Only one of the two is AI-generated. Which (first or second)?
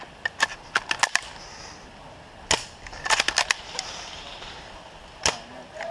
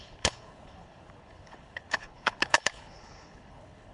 second